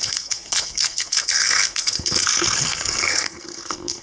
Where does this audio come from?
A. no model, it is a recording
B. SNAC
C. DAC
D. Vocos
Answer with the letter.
B